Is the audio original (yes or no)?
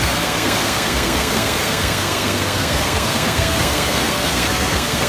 no